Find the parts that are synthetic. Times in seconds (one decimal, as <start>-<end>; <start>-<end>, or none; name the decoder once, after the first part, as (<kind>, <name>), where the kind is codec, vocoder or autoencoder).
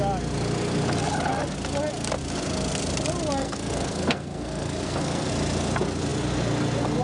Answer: 3.4-5.3 (codec, SNAC)